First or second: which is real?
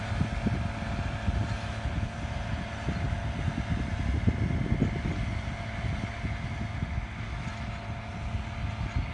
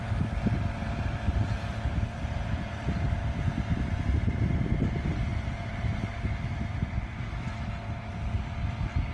first